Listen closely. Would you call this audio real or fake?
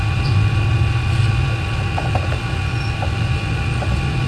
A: real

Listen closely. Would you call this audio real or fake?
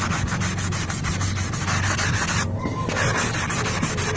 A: real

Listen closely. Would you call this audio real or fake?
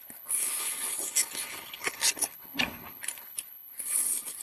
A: fake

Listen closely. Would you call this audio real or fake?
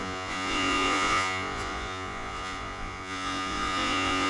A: fake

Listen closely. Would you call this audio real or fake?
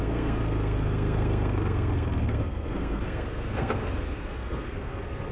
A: fake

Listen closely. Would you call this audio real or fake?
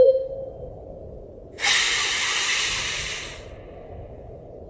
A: real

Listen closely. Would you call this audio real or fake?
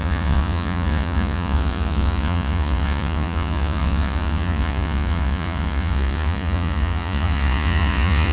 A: fake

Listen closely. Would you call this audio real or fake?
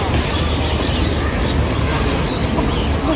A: real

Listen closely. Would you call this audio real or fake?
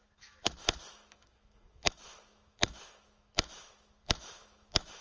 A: fake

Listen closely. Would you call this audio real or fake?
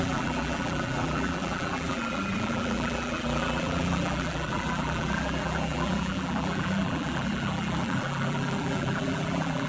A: fake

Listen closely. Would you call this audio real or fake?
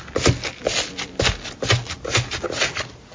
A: real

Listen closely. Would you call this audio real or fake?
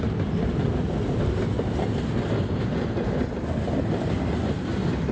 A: real